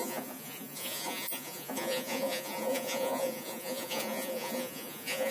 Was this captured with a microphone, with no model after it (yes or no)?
no